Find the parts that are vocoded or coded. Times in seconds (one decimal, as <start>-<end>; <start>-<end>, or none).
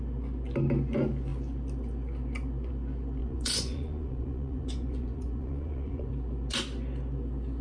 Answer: 3.2-6.1